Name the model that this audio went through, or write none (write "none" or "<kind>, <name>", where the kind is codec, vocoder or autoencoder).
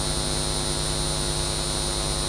none